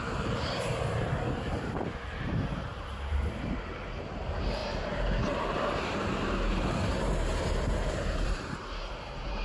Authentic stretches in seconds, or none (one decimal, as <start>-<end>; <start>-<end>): none